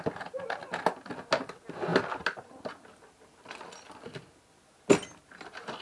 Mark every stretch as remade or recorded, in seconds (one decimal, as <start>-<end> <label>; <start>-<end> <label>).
0.0-5.8 recorded